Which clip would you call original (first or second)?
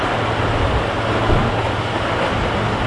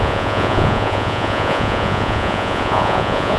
first